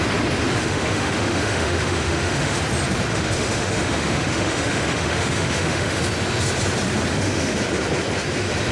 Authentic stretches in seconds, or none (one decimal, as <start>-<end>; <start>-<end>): 0.0-0.6; 2.6-3.1; 6.0-7.1; 7.6-8.7